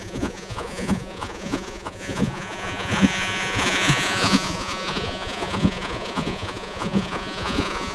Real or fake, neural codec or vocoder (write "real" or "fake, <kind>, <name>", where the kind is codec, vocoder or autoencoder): fake, vocoder, Vocos